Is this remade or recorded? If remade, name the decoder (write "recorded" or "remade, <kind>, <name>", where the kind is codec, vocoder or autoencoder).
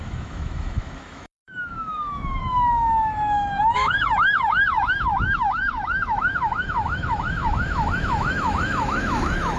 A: remade, autoencoder, DAC-VAE